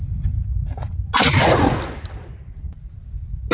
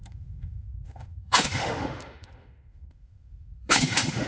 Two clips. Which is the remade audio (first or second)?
second